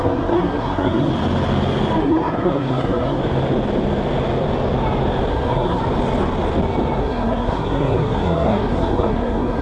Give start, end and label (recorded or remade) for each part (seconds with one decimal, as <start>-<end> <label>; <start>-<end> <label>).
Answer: 0.0-1.1 remade; 1.1-2.0 recorded; 2.0-3.2 remade; 3.2-5.3 recorded; 5.3-5.8 remade; 5.8-7.0 recorded; 7.0-9.6 remade